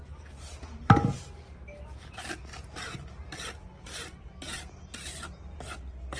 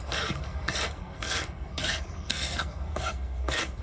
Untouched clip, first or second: first